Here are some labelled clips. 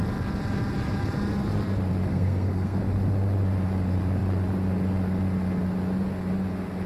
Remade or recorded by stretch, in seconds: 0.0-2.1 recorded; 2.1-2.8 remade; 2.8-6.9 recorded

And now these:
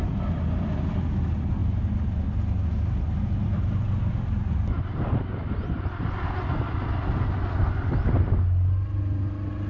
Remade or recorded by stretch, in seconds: 0.0-9.7 recorded

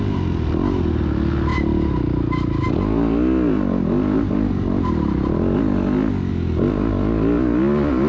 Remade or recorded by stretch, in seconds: 0.0-8.1 recorded